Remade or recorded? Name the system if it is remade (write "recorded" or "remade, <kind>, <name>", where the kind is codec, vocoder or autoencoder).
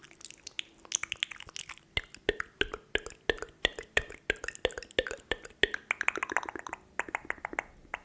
recorded